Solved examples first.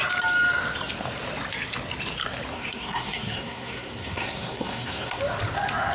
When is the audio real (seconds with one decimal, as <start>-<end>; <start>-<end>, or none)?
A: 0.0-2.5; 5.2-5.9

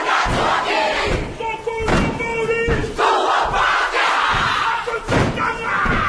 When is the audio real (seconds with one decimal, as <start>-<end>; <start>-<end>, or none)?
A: 0.0-6.1

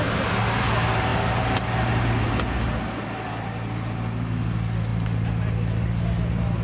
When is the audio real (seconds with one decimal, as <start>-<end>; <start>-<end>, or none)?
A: 0.0-6.6

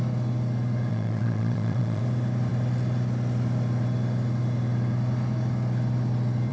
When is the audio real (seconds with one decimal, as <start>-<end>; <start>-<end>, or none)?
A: 0.0-0.9; 2.0-6.5

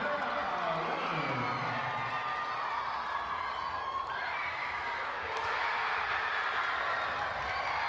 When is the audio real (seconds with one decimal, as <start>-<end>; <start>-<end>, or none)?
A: 0.0-4.6; 5.7-7.9

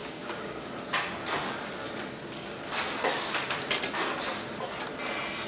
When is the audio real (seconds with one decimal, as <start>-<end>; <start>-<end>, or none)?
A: 0.7-5.5